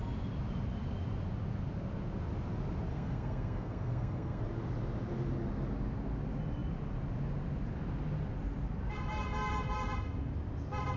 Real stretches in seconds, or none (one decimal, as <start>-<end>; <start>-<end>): 0.0-2.9; 4.4-11.0